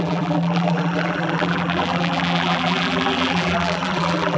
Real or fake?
fake